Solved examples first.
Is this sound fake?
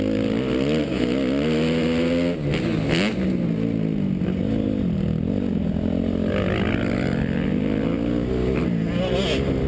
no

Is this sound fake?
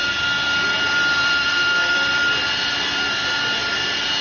no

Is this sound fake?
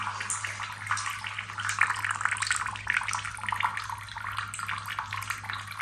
no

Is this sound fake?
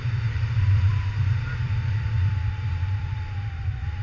yes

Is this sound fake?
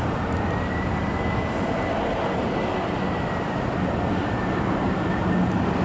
no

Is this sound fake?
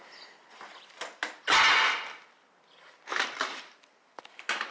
no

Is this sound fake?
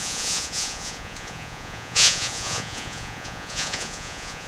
yes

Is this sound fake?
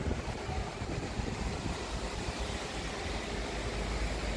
no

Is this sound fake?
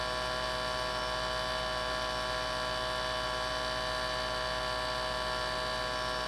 no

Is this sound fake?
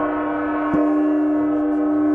no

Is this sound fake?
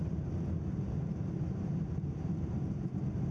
no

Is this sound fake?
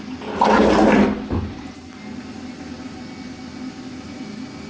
no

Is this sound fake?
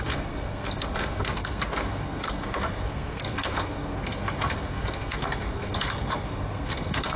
yes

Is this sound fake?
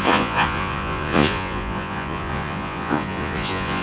yes